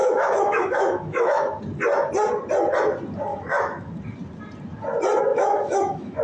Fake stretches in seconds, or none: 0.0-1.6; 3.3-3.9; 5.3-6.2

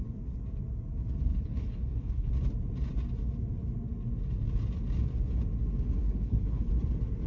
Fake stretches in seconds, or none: 1.3-2.3; 6.0-6.7

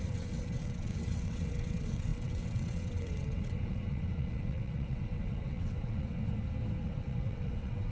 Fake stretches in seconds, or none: 0.0-6.2; 6.8-7.9

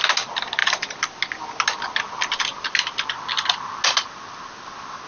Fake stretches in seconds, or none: none

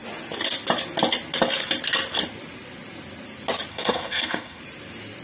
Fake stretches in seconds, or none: 3.7-4.6